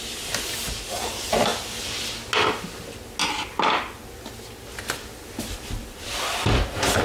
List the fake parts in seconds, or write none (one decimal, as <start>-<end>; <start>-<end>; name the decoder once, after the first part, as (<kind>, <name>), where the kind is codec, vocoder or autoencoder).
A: 0.0-1.5 (vocoder, BigVGAN v2); 5.3-7.0